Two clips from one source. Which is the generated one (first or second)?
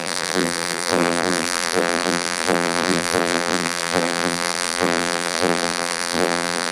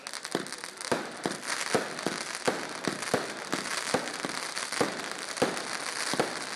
first